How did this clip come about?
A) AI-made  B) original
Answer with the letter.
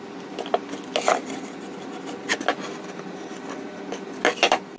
B